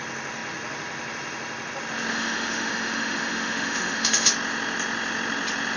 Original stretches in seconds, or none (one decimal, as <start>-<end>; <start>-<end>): 0.0-2.1; 4.3-5.8